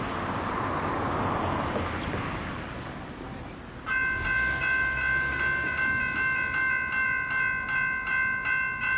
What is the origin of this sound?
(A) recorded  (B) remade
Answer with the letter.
A